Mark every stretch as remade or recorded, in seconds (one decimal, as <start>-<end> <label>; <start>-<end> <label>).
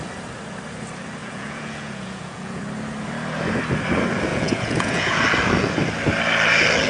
0.0-1.2 recorded; 1.2-2.6 remade; 2.6-4.3 recorded; 4.3-5.2 remade; 5.2-6.9 recorded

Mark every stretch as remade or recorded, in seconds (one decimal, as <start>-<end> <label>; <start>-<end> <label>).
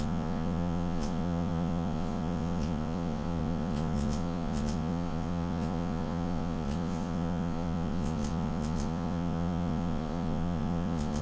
0.0-11.2 remade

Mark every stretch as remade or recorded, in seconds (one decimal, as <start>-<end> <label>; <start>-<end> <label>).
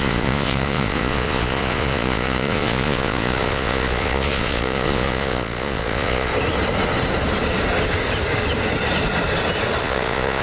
0.0-6.3 remade; 6.3-9.8 recorded; 9.8-10.4 remade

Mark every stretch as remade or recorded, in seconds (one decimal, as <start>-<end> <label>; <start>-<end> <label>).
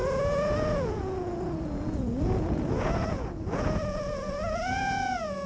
0.0-5.5 remade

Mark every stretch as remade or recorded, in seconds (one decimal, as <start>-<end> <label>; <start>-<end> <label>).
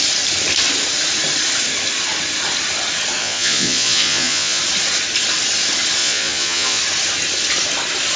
0.0-3.2 recorded; 3.2-4.6 remade; 4.6-6.0 recorded; 6.0-6.8 remade; 6.8-8.2 recorded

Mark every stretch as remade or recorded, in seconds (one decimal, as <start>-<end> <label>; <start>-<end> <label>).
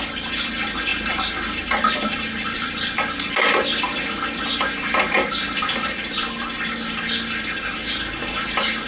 0.0-8.9 recorded